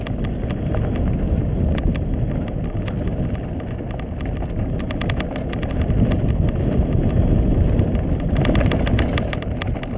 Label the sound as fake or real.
real